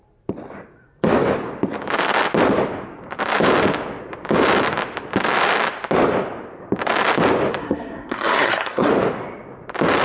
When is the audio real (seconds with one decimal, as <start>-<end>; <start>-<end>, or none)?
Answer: 0.0-7.6; 8.9-10.0